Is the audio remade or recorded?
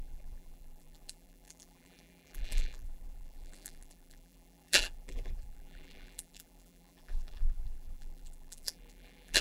remade